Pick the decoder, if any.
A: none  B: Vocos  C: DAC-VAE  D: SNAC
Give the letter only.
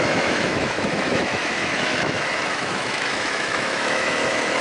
C